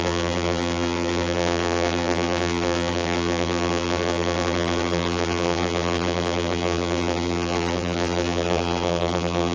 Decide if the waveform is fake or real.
fake